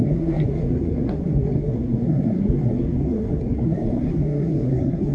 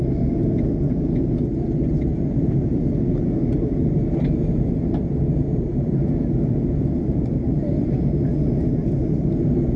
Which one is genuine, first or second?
second